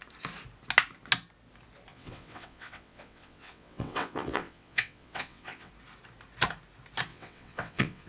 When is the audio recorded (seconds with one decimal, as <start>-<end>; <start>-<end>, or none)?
0.0-1.9; 5.7-7.1